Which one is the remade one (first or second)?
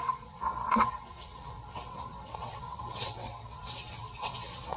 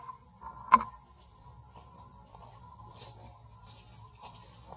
first